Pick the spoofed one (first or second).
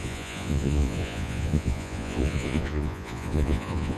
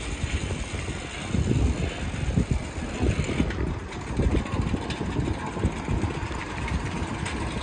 first